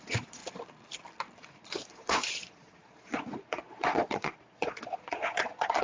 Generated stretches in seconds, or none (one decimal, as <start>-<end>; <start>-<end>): 0.0-0.4; 1.4-5.8